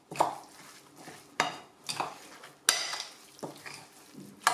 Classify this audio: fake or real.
real